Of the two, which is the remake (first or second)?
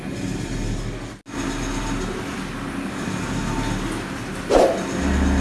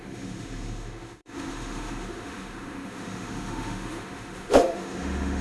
second